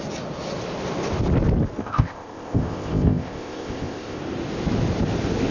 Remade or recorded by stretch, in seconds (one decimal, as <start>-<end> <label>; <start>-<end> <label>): 0.0-1.8 recorded; 1.8-4.2 remade; 4.2-5.5 recorded

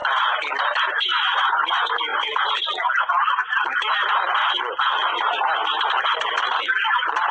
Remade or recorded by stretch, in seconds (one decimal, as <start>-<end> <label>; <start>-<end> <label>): 0.0-7.3 recorded

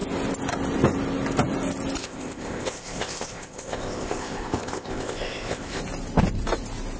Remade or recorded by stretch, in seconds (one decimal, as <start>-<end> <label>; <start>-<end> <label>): 0.0-2.0 recorded; 2.0-5.8 remade; 5.8-7.0 recorded

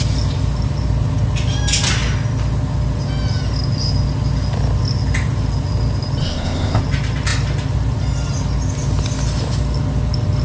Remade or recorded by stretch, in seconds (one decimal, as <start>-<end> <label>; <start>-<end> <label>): 0.0-6.2 recorded; 6.2-6.8 remade; 6.8-10.4 recorded

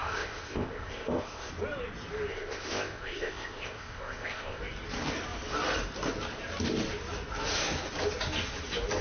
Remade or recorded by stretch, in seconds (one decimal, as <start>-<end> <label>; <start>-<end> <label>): 0.0-1.5 remade; 1.5-2.3 recorded; 2.3-4.6 remade; 4.6-9.0 recorded

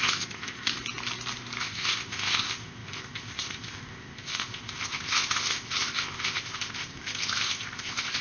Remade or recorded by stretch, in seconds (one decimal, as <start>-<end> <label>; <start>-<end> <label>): 0.0-0.7 remade; 0.7-1.6 recorded; 1.6-8.2 remade